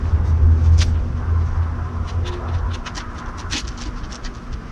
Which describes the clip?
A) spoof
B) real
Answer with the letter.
B